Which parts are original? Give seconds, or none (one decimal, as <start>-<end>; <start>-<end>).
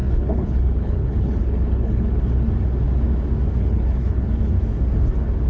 2.5-3.6; 4.5-5.5